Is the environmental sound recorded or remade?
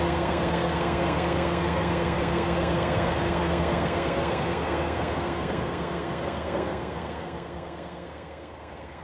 remade